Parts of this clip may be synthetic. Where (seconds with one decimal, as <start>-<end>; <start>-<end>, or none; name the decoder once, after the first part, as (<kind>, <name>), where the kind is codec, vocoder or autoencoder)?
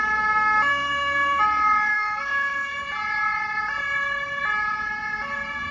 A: 0.7-1.4 (codec, SNAC); 1.9-2.8